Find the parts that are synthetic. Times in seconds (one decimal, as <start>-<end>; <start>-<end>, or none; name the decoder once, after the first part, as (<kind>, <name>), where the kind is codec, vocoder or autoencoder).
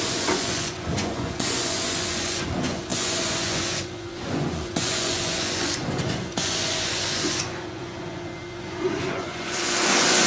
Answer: 0.0-10.3 (vocoder, Vocos)